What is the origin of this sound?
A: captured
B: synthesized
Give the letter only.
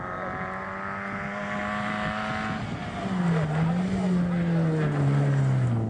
A